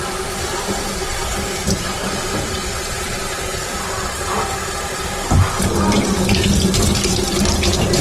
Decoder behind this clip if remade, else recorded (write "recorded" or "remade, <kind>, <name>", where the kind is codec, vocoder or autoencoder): remade, vocoder, BigVGAN v2